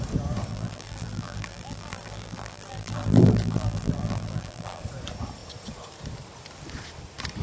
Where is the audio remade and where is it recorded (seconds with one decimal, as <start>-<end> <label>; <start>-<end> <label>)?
0.0-0.5 recorded; 0.5-4.8 remade; 4.8-7.4 recorded